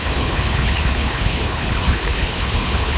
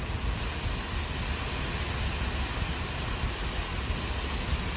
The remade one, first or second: first